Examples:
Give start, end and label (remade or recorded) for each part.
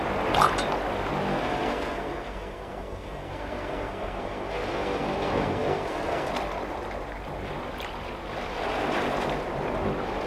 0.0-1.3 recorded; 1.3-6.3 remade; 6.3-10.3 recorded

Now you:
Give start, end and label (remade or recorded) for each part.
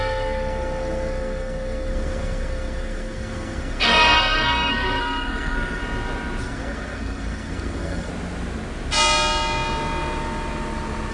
0.0-5.8 remade; 5.8-6.4 recorded; 6.4-8.1 remade; 8.1-11.1 recorded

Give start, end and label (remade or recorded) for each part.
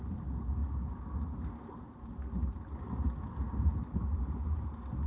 0.0-5.1 recorded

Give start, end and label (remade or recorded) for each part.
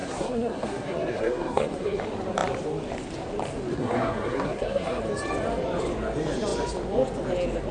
0.0-2.0 remade; 2.0-3.7 recorded; 3.7-5.0 remade; 5.0-7.7 recorded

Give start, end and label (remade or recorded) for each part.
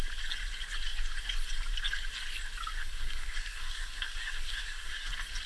0.0-2.8 recorded; 2.8-5.1 remade; 5.1-5.5 recorded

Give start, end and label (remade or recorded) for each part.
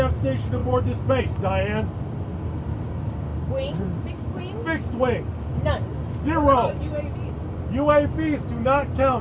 0.0-9.2 recorded